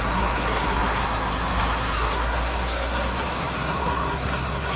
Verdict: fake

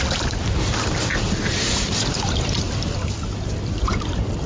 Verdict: fake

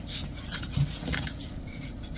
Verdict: fake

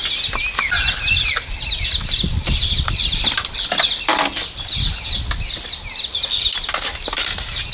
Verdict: real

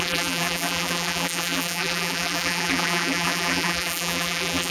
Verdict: fake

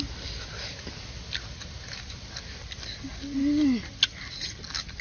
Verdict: real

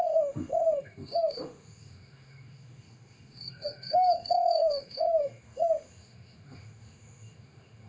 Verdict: fake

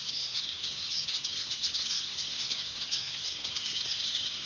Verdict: fake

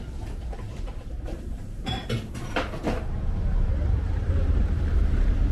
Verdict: fake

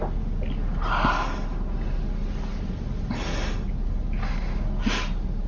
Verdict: real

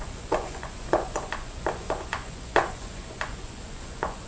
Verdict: fake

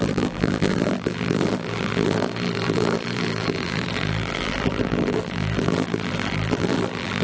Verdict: fake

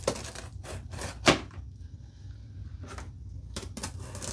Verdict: real